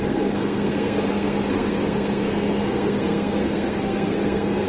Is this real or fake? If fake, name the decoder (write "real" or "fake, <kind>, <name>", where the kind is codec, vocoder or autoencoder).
fake, codec, SNAC